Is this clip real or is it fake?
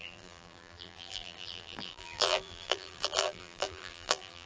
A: fake